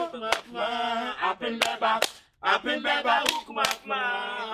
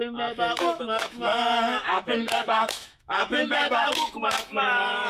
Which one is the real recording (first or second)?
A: first